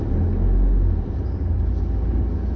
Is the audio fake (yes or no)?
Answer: no